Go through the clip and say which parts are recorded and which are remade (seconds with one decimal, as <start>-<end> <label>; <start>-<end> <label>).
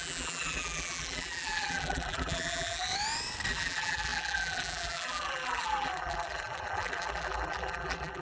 0.0-2.9 remade; 2.9-3.5 recorded; 3.5-8.2 remade